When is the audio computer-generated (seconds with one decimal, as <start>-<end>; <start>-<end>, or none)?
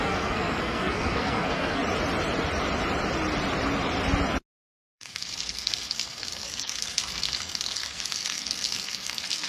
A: 0.0-1.8; 4.8-9.5